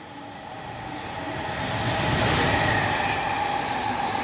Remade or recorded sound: recorded